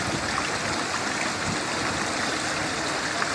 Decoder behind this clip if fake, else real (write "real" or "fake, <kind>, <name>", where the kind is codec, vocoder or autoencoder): real